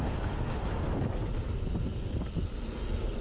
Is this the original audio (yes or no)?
yes